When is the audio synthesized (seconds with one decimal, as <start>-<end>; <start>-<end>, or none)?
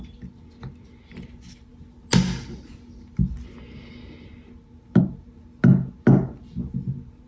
none